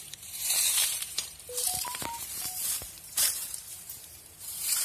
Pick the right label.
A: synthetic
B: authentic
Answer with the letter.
A